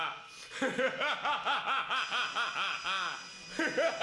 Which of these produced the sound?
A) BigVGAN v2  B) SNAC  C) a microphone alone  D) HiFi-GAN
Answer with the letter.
C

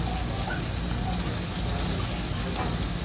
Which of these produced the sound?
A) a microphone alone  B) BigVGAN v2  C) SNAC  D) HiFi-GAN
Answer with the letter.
A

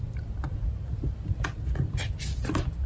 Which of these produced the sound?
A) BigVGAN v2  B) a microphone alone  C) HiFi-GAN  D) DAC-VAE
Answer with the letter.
B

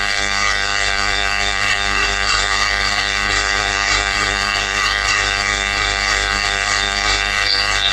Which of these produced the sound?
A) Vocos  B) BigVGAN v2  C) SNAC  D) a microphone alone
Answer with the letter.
C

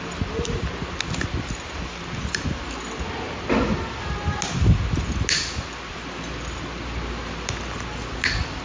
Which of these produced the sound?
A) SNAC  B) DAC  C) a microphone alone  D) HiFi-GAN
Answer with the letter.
C